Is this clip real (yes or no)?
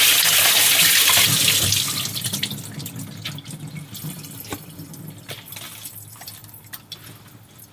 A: yes